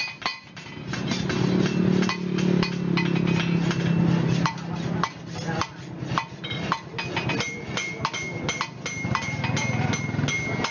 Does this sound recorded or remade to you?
recorded